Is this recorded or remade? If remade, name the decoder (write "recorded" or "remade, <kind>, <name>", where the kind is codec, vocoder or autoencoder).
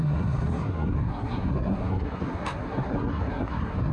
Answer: remade, codec, SNAC